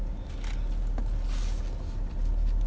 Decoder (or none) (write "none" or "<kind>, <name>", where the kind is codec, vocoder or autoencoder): none